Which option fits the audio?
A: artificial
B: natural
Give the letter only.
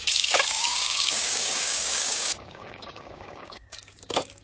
A